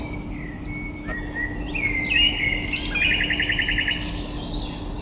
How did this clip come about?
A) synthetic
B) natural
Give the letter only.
B